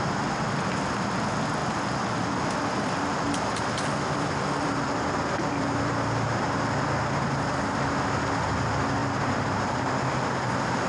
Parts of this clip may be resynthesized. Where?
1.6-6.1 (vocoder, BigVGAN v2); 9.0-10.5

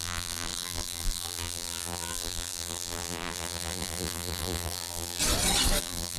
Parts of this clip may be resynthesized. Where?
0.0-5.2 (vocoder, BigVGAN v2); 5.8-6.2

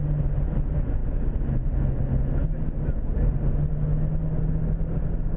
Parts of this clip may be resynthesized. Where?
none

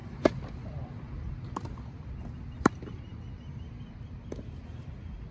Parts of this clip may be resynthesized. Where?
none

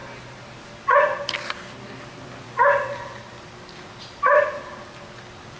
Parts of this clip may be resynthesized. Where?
none

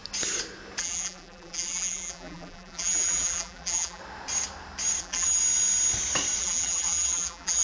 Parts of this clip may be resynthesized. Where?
0.8-4.0 (vocoder, BigVGAN v2); 5.0-5.4; 6.4-7.6

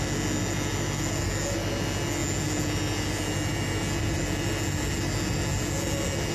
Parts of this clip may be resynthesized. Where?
none

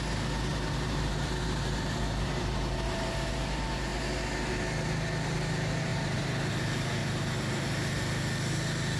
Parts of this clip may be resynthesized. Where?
0.5-3.1 (vocoder, BigVGAN v2); 5.9-6.5; 7.0-8.0